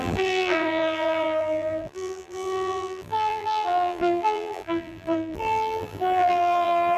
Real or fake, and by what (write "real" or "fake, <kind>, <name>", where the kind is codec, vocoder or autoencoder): fake, vocoder, BigVGAN v2